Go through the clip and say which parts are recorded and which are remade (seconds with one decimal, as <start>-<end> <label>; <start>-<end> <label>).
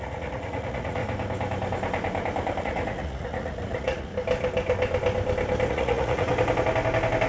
0.0-1.0 remade; 1.0-2.6 recorded; 2.6-4.1 remade; 4.1-5.7 recorded; 5.7-6.3 remade; 6.3-7.3 recorded